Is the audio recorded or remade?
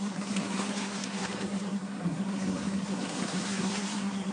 remade